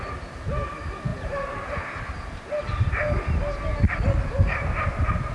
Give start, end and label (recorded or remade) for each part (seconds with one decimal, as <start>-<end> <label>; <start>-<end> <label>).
0.0-5.3 recorded